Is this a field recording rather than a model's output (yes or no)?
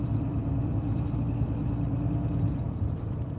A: no